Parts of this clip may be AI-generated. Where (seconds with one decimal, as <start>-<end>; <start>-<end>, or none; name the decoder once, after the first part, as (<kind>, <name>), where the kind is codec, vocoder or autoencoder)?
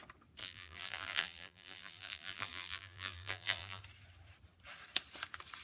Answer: 0.4-3.8 (vocoder, BigVGAN v2)